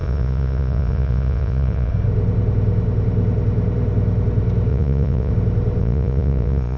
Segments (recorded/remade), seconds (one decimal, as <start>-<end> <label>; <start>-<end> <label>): 0.0-1.9 remade; 1.9-4.7 recorded; 4.7-5.3 remade; 5.3-5.8 recorded; 5.8-6.8 remade